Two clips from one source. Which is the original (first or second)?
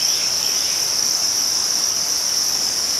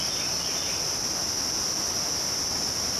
second